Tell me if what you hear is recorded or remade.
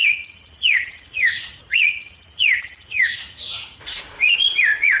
remade